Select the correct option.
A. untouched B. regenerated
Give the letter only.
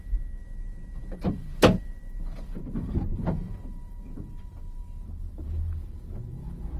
B